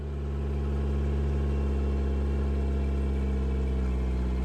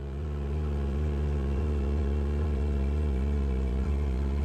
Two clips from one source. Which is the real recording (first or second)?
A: first